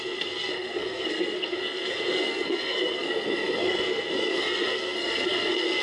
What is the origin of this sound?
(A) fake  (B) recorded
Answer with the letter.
A